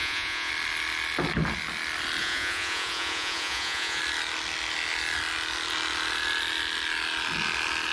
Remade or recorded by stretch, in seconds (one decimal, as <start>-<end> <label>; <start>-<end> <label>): 0.0-0.5 remade; 0.5-2.2 recorded; 2.2-4.0 remade; 4.0-7.9 recorded